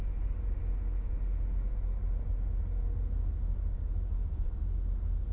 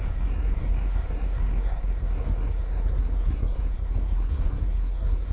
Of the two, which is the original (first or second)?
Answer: first